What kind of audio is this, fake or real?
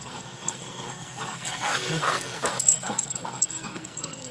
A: fake